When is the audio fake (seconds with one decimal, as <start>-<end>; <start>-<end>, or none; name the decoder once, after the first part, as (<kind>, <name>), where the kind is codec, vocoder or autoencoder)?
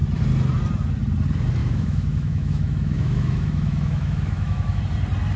1.6-4.8 (autoencoder, DAC-VAE)